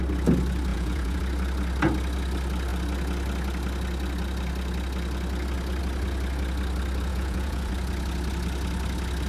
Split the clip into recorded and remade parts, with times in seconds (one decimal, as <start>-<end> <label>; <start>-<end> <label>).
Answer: 0.0-0.7 recorded; 0.7-1.2 remade; 1.2-7.1 recorded; 7.1-7.7 remade; 7.7-9.3 recorded